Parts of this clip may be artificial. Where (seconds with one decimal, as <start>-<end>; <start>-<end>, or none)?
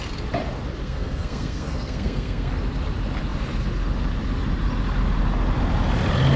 0.8-2.5